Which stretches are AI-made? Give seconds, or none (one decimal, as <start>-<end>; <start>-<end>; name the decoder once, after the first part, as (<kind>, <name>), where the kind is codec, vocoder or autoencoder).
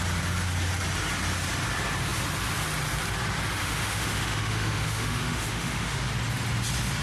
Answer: 3.6-6.1 (autoencoder, DAC-VAE)